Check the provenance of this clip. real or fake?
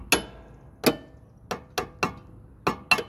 real